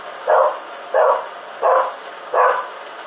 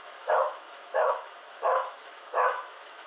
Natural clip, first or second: first